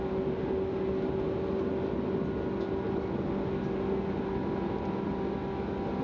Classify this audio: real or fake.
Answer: real